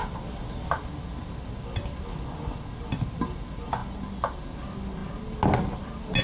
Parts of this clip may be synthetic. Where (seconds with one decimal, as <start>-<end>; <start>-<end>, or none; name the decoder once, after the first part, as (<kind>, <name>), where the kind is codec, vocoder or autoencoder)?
none